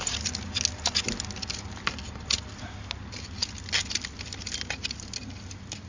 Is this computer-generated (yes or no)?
no